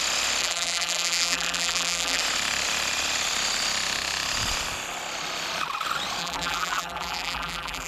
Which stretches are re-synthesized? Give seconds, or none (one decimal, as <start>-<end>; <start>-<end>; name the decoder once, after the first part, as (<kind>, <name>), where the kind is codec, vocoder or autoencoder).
0.4-2.2 (vocoder, BigVGAN v2); 6.2-7.9

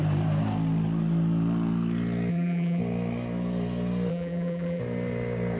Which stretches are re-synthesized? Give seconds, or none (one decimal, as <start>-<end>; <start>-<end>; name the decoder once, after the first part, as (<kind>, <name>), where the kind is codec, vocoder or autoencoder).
2.3-2.8 (vocoder, BigVGAN v2); 4.1-4.8

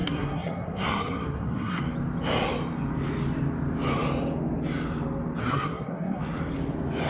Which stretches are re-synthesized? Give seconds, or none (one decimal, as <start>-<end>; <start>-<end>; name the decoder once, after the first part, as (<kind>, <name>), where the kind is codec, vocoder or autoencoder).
0.0-1.8 (codec, SNAC); 5.4-6.2

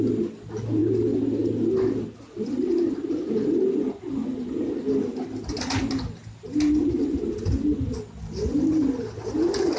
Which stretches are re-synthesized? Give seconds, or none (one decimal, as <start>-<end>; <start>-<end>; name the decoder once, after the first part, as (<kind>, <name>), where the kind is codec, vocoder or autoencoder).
none

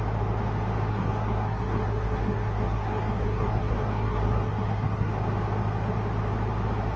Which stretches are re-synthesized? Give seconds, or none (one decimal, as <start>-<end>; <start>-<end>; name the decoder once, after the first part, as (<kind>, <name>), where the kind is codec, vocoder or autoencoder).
0.9-5.1 (codec, SNAC)